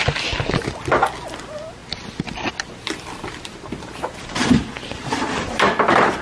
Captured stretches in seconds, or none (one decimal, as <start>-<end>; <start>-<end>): 0.0-6.2